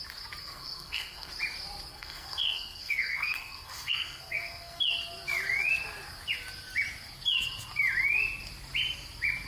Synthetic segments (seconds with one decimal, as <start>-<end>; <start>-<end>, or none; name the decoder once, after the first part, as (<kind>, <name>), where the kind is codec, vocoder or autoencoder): 0.4-1.3 (codec, SNAC); 1.9-4.8